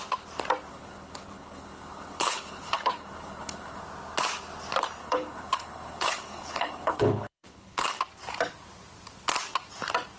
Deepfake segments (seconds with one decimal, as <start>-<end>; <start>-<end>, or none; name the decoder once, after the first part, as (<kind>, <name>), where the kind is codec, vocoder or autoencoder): 0.7-3.8 (codec, HILCodec); 5.0-8.0